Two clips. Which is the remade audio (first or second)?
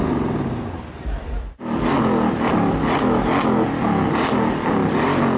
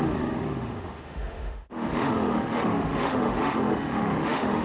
second